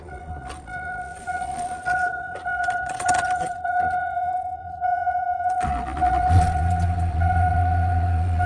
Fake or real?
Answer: fake